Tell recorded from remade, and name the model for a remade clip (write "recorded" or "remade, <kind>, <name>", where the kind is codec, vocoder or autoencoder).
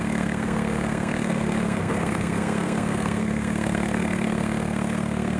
remade, codec, SNAC